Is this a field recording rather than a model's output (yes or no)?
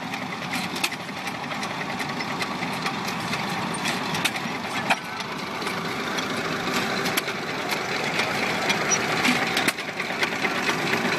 yes